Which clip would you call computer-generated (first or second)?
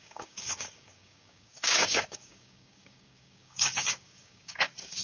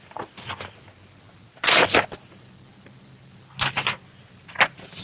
first